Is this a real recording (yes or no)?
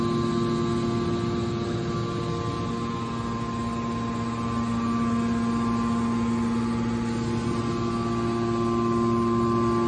yes